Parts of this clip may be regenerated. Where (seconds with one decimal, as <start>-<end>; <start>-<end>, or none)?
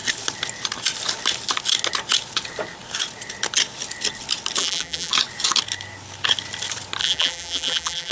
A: 4.6-5.1; 7.0-8.1